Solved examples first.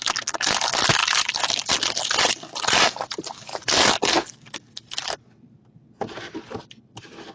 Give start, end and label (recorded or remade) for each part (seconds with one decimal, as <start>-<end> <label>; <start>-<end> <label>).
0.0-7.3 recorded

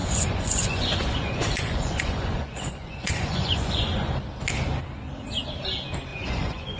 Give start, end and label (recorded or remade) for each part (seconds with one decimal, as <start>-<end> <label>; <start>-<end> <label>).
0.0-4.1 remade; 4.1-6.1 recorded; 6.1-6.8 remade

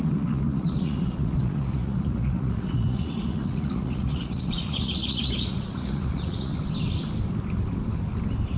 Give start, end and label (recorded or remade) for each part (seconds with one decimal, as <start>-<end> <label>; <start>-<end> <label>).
0.0-6.5 remade; 6.5-8.6 recorded

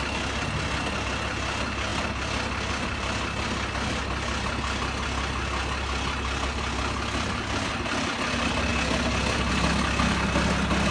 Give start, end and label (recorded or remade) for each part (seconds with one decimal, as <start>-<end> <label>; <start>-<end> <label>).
0.0-10.9 recorded

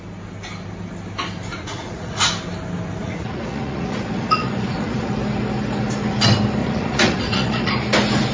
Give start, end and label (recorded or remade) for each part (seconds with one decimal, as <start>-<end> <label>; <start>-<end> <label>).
0.0-1.5 recorded; 1.5-2.3 remade; 2.3-3.0 recorded; 3.0-5.1 remade; 5.1-6.6 recorded; 6.6-7.7 remade; 7.7-8.3 recorded

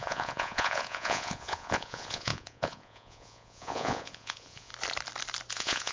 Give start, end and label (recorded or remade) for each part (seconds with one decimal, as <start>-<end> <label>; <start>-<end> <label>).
0.0-4.7 remade; 4.7-5.5 recorded; 5.5-5.9 remade

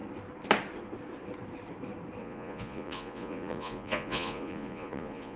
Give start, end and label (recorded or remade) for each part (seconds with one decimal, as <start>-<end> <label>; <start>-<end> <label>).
0.0-2.2 recorded; 2.2-5.4 remade